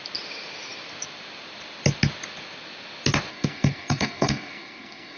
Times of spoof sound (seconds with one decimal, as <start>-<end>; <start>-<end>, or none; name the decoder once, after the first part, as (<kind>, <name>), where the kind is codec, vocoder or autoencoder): 3.3-5.2 (codec, SNAC)